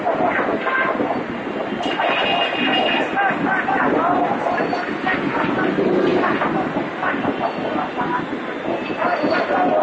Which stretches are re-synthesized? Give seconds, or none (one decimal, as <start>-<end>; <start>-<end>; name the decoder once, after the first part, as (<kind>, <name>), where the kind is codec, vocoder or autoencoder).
none